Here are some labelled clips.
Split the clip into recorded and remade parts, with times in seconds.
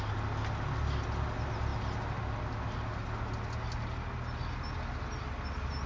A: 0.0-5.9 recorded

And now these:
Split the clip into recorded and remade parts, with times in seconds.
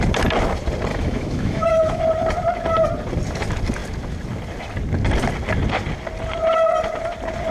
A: 0.0-0.9 recorded; 0.9-2.0 remade; 2.0-7.5 recorded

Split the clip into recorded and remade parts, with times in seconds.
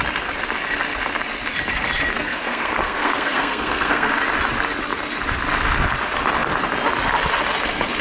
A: 0.0-2.1 recorded; 2.1-4.2 remade; 4.2-8.0 recorded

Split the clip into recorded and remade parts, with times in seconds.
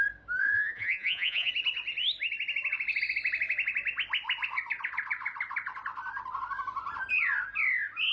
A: 0.0-0.4 recorded; 0.4-1.5 remade; 1.5-8.1 recorded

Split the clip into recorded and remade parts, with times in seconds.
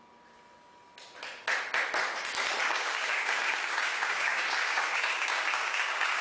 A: 0.0-2.6 recorded; 2.6-6.2 remade